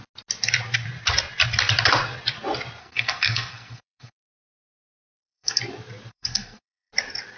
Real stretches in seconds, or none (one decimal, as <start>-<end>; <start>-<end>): 0.0-2.8; 5.6-6.1; 6.9-7.4